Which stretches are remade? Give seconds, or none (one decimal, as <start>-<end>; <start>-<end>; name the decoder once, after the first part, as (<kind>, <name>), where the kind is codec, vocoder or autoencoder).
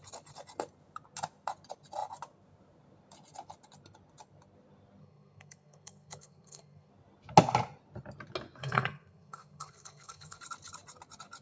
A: 5.0-6.9 (codec, SNAC); 8.6-10.4